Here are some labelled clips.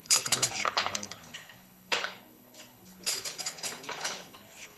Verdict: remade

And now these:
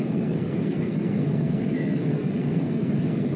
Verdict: remade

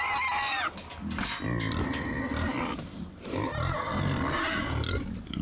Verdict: recorded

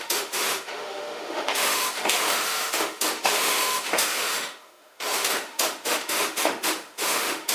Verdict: remade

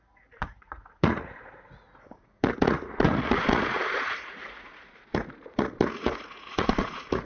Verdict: remade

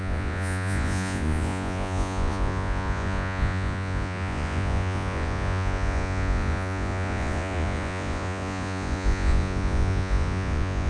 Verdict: remade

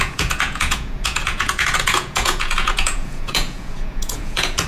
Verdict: remade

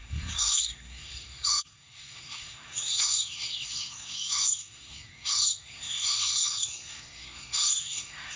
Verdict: remade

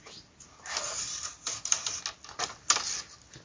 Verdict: recorded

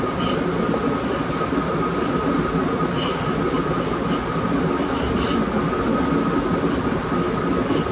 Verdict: recorded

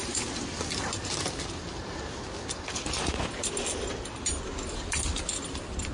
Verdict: recorded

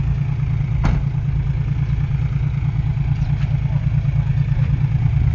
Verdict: recorded